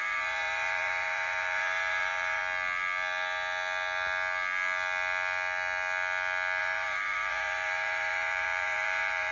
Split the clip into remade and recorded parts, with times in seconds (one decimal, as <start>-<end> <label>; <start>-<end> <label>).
0.0-2.4 remade; 2.4-6.6 recorded; 6.6-9.3 remade